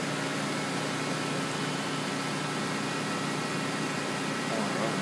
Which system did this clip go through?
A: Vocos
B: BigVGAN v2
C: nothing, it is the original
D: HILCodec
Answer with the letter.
C